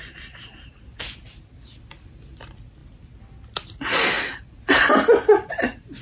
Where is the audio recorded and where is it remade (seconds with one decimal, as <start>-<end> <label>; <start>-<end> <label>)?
0.0-6.0 recorded